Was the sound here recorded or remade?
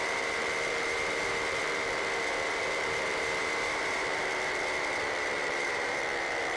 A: remade